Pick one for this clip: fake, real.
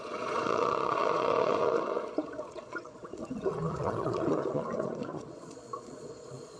fake